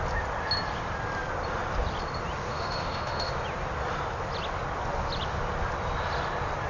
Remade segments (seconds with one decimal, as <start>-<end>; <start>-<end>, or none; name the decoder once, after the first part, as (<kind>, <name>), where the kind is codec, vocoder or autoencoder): 2.5-3.3 (autoencoder, DAC-VAE)